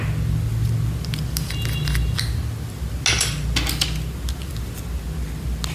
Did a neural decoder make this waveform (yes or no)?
no